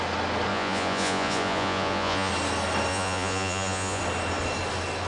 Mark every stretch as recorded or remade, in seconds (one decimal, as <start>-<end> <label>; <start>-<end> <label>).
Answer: 0.0-0.5 recorded; 0.5-2.3 remade; 2.3-2.9 recorded; 2.9-4.0 remade; 4.0-5.1 recorded